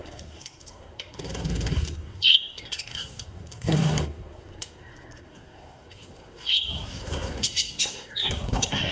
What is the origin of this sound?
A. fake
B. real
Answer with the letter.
A